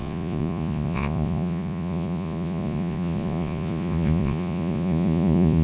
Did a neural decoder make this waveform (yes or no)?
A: yes